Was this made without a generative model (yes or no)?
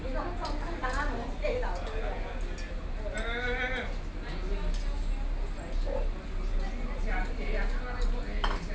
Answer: yes